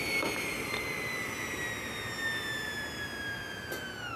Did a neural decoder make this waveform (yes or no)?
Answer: no